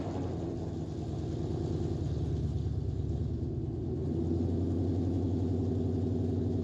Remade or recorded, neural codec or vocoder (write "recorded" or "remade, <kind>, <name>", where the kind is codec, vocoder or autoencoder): recorded